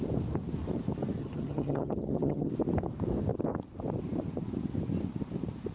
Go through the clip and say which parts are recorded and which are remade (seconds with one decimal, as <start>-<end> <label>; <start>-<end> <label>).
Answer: 0.0-1.2 recorded; 1.2-2.5 remade; 2.5-5.7 recorded